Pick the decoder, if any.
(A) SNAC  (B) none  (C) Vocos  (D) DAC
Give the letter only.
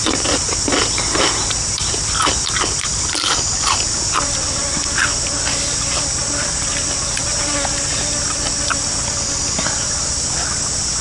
B